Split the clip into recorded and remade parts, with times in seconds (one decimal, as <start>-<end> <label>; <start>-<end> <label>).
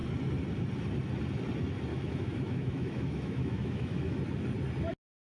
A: 0.0-1.9 recorded; 1.9-4.2 remade; 4.2-5.2 recorded